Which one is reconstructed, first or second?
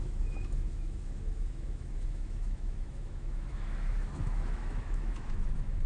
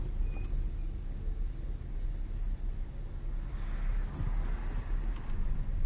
first